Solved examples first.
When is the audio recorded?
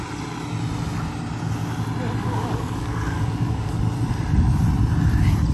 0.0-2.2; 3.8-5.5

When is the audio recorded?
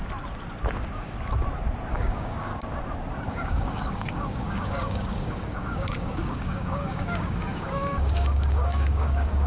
0.0-1.9; 2.5-3.3